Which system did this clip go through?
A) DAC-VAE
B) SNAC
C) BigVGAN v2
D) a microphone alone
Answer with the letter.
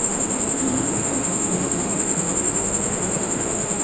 A